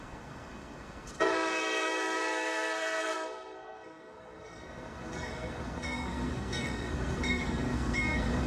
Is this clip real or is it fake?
fake